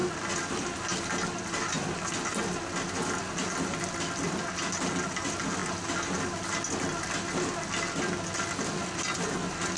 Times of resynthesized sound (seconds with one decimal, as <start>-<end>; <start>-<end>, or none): none